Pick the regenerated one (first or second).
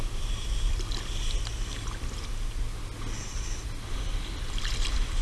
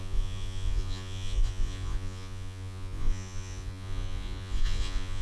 second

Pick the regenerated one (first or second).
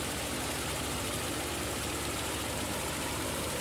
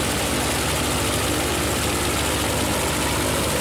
first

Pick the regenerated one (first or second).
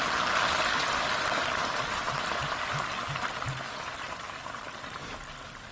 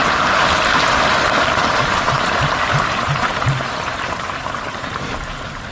second